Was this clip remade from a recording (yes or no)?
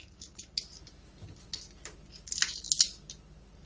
no